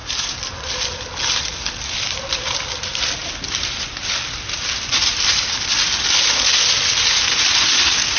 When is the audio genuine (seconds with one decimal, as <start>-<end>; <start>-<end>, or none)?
0.0-8.2